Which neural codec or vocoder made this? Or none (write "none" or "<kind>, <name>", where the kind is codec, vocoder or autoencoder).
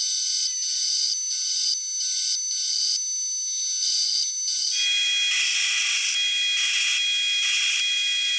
none